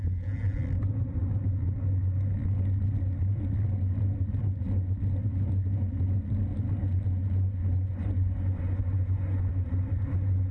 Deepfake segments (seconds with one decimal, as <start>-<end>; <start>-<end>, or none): 7.7-9.5